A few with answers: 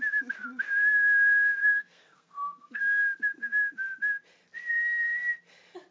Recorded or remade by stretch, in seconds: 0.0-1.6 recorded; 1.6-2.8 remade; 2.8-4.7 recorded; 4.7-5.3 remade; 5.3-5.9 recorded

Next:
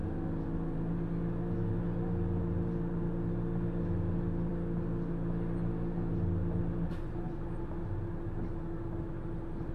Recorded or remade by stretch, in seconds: 0.0-9.7 recorded

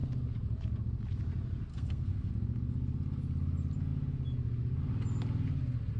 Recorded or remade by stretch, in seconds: 0.0-1.7 recorded; 1.7-2.3 remade; 2.3-6.0 recorded

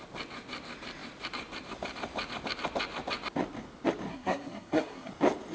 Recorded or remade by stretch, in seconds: 0.0-4.1 recorded; 4.1-5.1 remade; 5.1-5.5 recorded

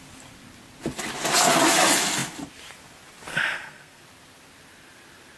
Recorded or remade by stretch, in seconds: 0.0-3.3 recorded; 3.3-4.0 remade; 4.0-5.4 recorded

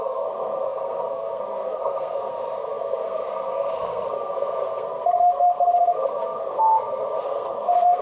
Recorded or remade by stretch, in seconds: 0.0-8.0 remade

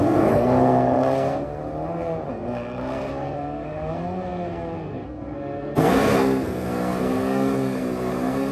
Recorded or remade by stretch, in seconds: 0.0-1.6 remade; 1.6-2.3 recorded; 2.3-8.5 remade

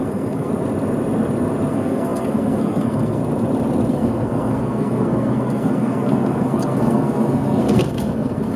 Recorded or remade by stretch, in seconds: 0.0-0.5 remade; 0.5-1.7 recorded; 1.7-3.2 remade; 3.2-3.9 recorded; 3.9-8.6 remade